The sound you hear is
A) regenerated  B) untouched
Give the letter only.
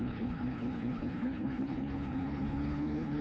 A